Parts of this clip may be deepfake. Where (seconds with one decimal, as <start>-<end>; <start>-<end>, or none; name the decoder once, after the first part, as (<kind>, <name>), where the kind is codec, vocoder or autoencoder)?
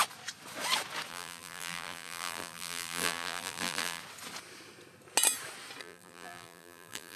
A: 1.1-4.0 (vocoder, BigVGAN v2); 5.8-7.2